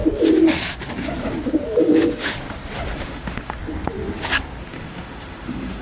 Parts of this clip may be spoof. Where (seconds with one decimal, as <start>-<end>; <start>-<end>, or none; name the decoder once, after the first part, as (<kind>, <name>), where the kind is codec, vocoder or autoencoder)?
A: 1.8-2.3 (autoencoder, DAC-VAE); 2.9-3.6; 4.6-5.8